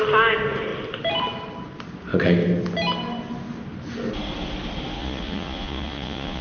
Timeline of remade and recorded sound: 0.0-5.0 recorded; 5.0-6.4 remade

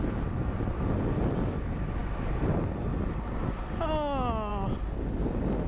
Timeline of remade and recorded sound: 0.0-5.7 recorded

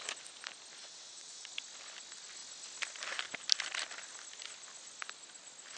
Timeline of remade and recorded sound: 0.0-0.8 recorded; 0.8-1.5 remade; 1.5-5.8 recorded